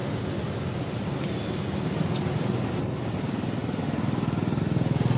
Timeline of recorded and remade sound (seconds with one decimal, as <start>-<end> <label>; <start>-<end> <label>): 0.0-5.2 recorded